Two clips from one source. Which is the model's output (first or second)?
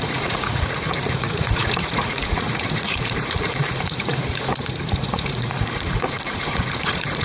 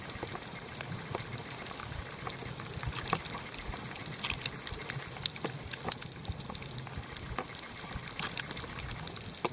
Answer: first